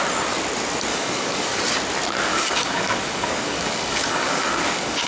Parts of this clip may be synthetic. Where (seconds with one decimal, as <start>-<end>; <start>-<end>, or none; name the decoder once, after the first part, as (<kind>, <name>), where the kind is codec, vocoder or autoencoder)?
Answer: 0.9-1.6 (codec, DAC); 2.3-5.1